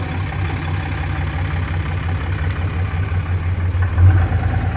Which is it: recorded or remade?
recorded